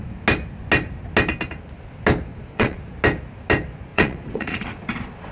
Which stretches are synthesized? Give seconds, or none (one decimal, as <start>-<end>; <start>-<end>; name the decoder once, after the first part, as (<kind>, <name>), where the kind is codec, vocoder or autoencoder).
2.3-2.8 (vocoder, Vocos); 3.9-5.3